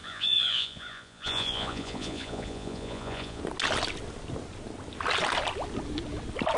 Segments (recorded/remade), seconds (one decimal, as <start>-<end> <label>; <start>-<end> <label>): 0.0-3.4 remade; 3.4-6.6 recorded